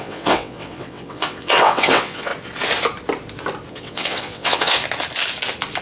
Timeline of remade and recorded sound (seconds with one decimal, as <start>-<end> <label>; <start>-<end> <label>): 0.0-2.3 remade; 2.3-3.7 recorded; 3.7-4.8 remade; 4.8-5.8 recorded

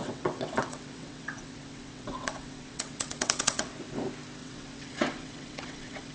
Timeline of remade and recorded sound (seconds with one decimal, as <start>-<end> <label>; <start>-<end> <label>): 0.0-3.7 remade; 3.7-4.4 recorded; 4.4-6.1 remade